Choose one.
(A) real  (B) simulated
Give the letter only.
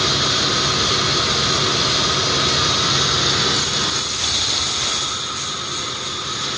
A